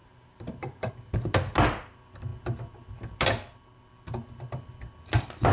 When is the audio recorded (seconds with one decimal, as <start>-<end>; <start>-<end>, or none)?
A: 0.9-5.5